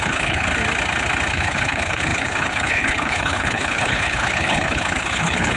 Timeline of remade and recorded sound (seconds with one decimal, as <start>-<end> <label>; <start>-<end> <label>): 0.0-0.5 remade; 0.5-1.3 recorded; 1.3-5.6 remade